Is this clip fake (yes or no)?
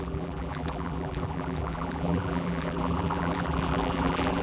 yes